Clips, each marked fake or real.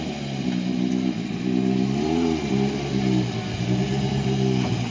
real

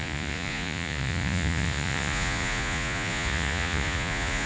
fake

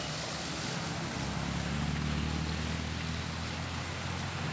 real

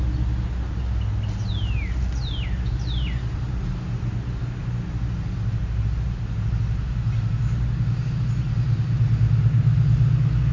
real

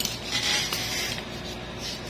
real